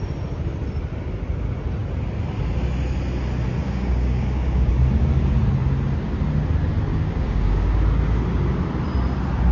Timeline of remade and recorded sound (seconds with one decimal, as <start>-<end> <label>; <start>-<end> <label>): 0.0-3.6 recorded; 3.6-4.7 remade; 4.7-6.9 recorded; 6.9-7.7 remade; 7.7-9.5 recorded